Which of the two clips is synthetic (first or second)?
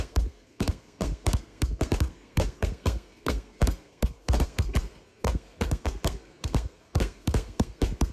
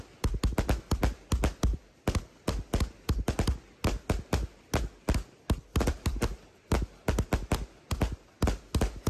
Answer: first